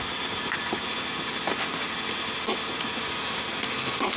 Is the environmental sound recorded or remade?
recorded